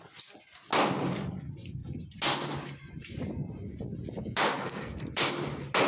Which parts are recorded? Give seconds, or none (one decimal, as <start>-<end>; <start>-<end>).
0.0-4.5; 5.0-5.9

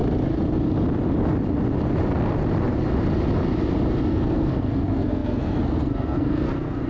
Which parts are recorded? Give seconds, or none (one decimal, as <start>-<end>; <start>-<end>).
0.0-4.1

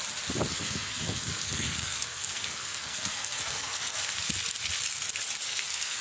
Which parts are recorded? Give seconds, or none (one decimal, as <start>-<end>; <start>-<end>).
0.0-0.5; 4.1-5.5

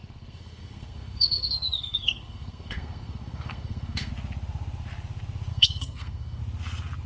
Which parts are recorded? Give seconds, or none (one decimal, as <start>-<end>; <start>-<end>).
4.1-5.5; 6.4-7.1

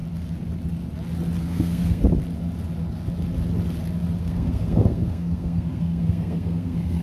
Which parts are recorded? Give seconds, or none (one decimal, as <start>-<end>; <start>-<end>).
0.0-1.4; 2.0-4.2

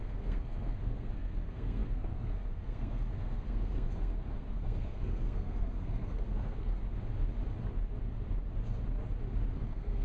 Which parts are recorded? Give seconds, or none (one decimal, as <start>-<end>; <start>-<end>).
6.8-9.5